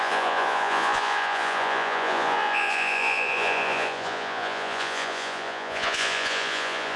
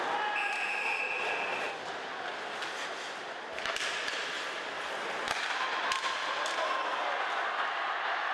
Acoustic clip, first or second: second